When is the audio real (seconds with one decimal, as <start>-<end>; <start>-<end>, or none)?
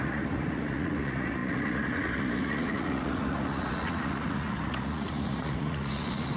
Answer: none